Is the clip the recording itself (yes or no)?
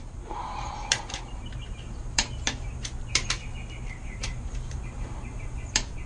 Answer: no